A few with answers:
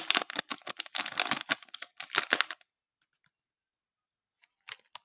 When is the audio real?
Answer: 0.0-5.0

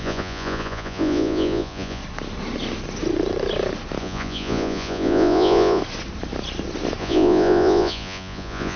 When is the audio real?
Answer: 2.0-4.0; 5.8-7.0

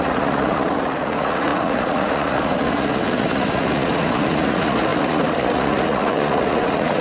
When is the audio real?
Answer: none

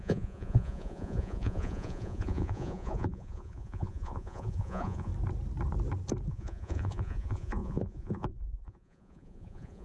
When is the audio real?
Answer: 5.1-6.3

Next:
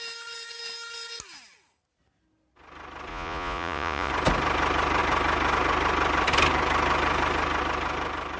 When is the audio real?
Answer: 0.0-3.1; 4.1-8.4

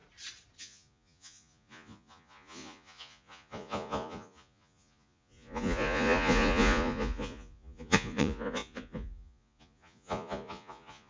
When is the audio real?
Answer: 0.0-0.6

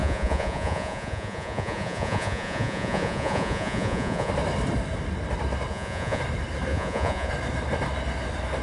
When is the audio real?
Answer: 4.3-5.7; 6.2-6.7; 7.3-8.6